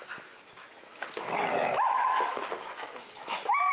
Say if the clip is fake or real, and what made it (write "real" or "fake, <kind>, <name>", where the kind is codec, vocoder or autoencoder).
fake, autoencoder, DAC-VAE